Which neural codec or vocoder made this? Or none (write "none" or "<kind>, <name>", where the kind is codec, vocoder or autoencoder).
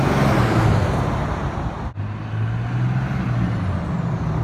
none